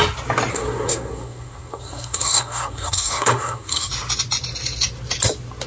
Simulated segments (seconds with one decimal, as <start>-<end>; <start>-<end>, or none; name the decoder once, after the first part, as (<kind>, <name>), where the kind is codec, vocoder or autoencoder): 0.5-3.9 (codec, SNAC)